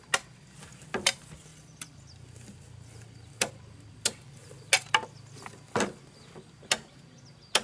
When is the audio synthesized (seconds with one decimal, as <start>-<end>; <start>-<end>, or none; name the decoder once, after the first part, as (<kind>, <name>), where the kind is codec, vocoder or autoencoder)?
none